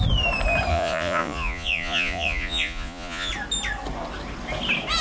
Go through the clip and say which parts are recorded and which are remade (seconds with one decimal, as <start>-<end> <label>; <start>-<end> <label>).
0.0-0.7 recorded; 0.7-3.3 remade; 3.3-5.0 recorded